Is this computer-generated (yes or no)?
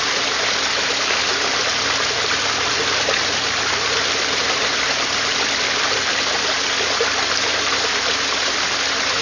no